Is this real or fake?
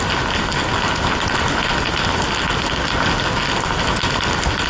real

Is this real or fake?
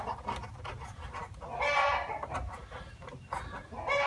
real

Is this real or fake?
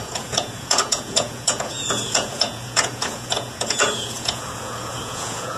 fake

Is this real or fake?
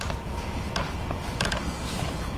real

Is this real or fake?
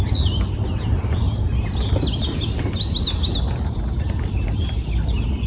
real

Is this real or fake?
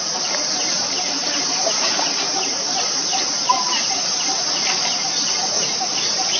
real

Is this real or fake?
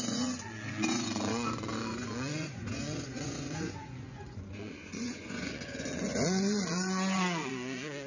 fake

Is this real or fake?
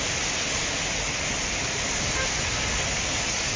real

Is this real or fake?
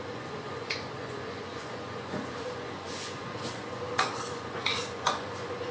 fake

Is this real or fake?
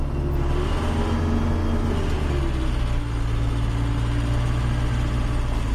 real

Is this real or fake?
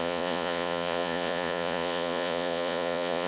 fake